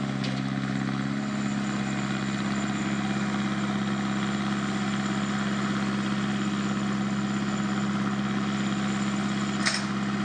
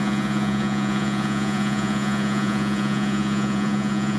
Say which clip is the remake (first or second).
second